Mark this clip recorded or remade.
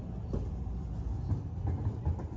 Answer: recorded